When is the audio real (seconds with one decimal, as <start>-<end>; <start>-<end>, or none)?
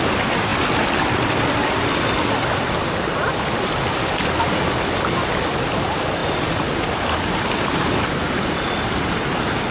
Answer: 0.0-9.7